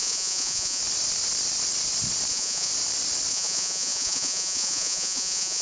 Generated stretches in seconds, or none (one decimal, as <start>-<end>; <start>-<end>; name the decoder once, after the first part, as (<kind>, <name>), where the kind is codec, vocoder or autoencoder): 0.0-0.8 (vocoder, Vocos); 2.3-2.7; 3.3-5.6